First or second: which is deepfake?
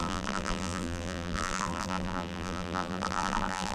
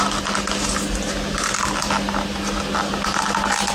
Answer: first